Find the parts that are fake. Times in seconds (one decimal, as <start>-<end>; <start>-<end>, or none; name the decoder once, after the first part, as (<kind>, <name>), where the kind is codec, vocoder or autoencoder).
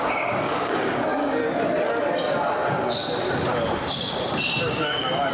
0.0-1.4 (codec, DAC); 4.6-5.3